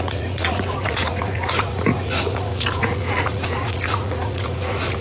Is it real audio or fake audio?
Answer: fake